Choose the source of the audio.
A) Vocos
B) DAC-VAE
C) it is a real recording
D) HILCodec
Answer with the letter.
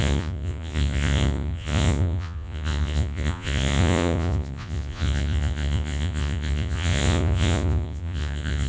A